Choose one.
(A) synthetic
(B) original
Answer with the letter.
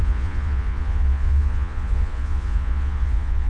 A